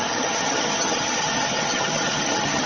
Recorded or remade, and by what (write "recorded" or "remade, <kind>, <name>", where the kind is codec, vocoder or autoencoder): remade, vocoder, HiFi-GAN